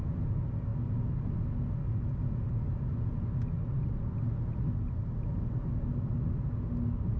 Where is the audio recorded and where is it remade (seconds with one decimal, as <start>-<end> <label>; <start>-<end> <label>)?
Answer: 0.0-7.2 recorded